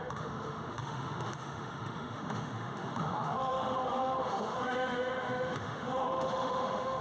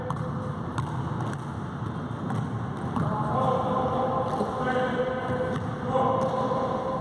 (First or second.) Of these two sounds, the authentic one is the second